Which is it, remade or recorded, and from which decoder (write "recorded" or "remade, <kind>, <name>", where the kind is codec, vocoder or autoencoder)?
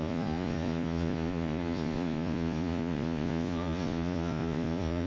remade, vocoder, Vocos